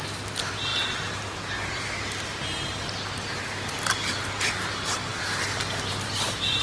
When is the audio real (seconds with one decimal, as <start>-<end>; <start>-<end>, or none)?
0.0-6.6